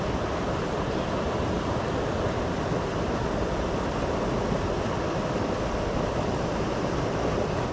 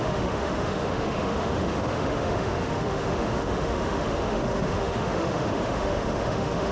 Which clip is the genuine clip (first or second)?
first